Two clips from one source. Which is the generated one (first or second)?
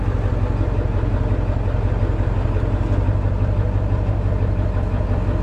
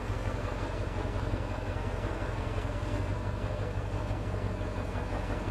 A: second